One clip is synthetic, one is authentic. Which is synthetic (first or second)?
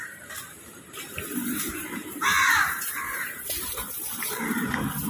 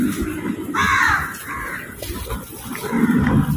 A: first